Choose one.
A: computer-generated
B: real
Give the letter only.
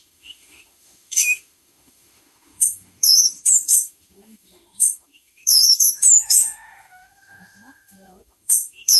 A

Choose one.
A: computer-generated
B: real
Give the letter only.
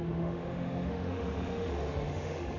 A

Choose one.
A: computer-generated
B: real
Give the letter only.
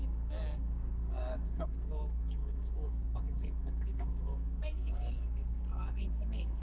A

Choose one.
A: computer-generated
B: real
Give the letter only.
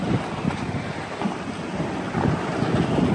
B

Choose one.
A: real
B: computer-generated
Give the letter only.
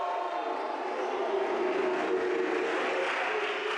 A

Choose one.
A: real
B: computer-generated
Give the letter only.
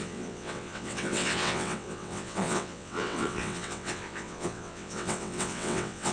B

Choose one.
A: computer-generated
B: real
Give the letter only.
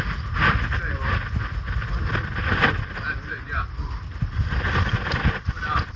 B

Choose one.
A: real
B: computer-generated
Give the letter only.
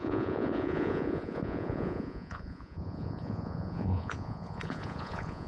B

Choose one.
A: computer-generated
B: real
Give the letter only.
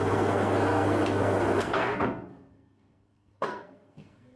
A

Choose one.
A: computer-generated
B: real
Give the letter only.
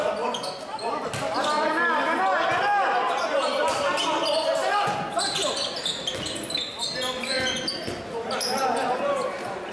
B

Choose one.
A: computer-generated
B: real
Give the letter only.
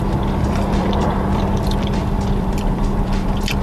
A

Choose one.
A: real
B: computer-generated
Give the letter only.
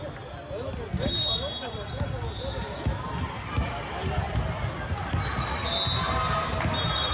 A